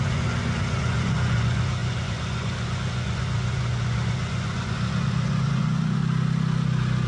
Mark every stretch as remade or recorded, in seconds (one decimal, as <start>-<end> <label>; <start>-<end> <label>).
0.0-6.0 remade; 6.0-7.1 recorded